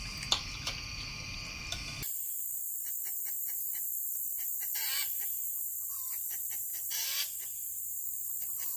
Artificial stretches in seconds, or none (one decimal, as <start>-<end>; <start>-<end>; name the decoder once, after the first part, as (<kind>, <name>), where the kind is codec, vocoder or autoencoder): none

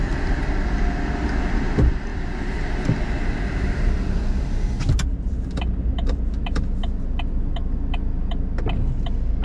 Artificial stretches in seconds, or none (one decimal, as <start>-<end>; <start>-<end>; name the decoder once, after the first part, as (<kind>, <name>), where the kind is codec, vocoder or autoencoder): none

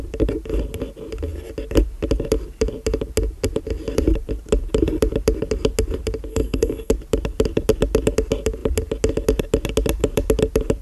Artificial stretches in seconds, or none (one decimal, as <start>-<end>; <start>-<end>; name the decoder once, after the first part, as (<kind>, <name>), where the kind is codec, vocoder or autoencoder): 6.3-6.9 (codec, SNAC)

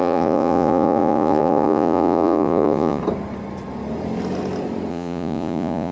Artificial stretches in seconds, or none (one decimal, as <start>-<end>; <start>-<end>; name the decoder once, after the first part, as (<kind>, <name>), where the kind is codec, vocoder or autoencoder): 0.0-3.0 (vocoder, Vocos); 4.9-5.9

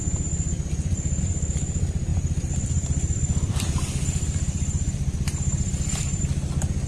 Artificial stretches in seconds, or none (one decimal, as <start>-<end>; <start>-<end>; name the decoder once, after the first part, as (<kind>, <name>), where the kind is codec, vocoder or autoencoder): 2.1-6.2 (vocoder, BigVGAN v2)

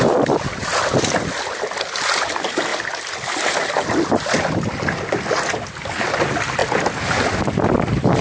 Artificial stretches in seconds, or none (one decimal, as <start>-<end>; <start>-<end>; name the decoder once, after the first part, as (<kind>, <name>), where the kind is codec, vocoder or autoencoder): none